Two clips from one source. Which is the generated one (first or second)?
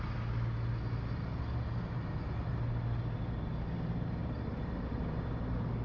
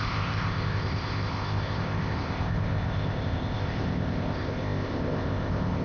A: second